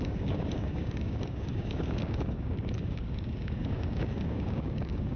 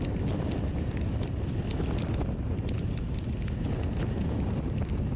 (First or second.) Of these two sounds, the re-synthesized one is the first